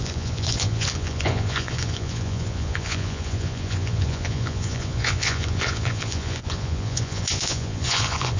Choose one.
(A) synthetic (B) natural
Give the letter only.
A